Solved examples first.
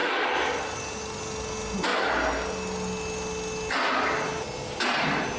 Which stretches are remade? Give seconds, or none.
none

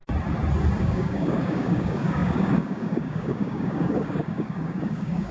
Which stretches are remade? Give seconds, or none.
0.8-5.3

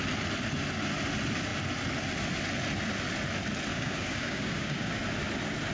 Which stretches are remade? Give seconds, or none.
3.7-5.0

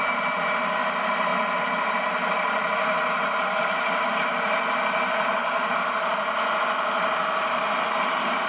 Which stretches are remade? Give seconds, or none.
5.4-5.9